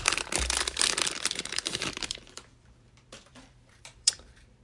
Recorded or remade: remade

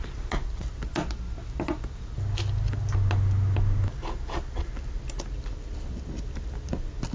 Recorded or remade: recorded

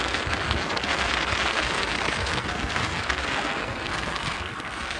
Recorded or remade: remade